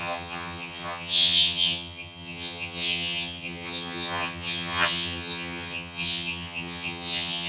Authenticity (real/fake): fake